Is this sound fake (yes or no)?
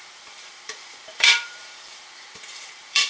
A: yes